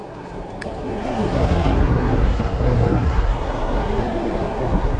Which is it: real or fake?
fake